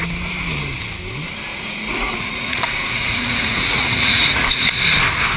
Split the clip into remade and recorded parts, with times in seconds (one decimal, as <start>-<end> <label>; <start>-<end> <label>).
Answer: 0.0-1.5 recorded; 1.5-4.7 remade; 4.7-5.4 recorded